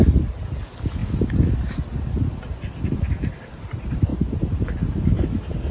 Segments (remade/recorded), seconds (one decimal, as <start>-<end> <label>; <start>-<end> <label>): 0.0-5.7 recorded